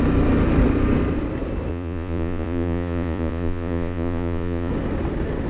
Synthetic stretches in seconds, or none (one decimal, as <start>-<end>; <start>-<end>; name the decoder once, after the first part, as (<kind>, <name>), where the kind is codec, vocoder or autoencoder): 1.7-4.7 (vocoder, Vocos)